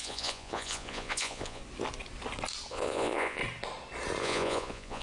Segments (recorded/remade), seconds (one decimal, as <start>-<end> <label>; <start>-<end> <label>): 0.0-1.6 remade; 1.6-2.7 recorded; 2.7-3.4 remade; 3.4-4.2 recorded; 4.2-5.0 remade